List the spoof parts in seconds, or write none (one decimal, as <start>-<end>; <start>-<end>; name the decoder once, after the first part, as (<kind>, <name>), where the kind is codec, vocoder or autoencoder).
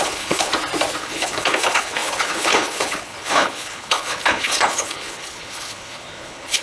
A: 0.0-0.5 (codec, HILCodec); 1.0-6.6